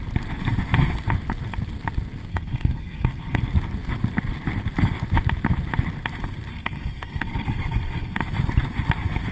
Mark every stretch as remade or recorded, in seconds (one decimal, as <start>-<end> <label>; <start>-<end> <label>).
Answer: 0.0-2.3 recorded; 2.3-3.4 remade; 3.4-6.5 recorded; 6.5-8.2 remade; 8.2-9.3 recorded